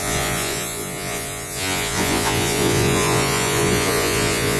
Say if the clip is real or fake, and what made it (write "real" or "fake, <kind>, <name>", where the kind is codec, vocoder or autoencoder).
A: fake, vocoder, Vocos